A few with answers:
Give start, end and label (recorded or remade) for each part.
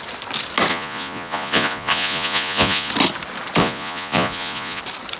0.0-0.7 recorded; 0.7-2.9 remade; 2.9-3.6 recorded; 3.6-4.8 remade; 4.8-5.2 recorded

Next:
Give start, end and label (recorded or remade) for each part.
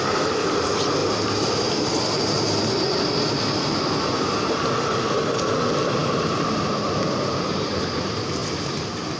0.0-9.2 recorded